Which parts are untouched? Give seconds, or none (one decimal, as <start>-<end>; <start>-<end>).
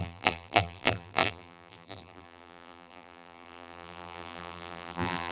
none